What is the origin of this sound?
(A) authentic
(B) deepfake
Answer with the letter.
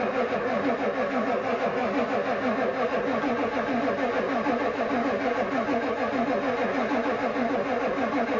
A